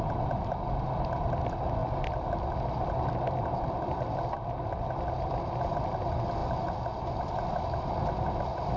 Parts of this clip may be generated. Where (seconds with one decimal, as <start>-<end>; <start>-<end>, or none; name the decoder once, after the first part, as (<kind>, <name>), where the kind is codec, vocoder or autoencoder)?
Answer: none